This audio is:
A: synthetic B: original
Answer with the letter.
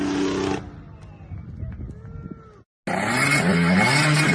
B